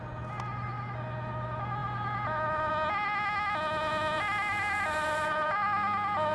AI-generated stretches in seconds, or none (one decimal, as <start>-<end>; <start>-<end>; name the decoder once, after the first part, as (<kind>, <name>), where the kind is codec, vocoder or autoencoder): none